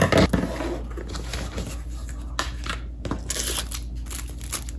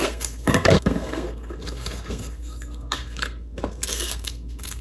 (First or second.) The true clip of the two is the first